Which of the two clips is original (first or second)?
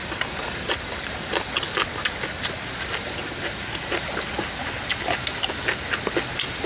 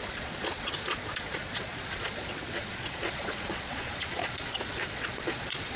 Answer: first